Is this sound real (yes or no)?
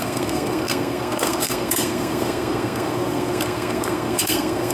no